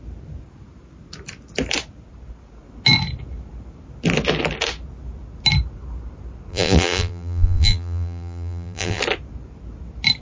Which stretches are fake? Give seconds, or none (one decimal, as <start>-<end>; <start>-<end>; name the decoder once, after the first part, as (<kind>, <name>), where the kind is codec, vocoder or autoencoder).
6.5-9.0 (vocoder, BigVGAN v2)